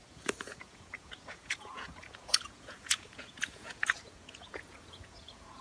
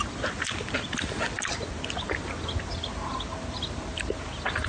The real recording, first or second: second